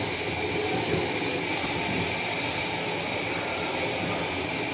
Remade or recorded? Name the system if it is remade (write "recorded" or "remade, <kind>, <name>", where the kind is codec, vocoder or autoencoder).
recorded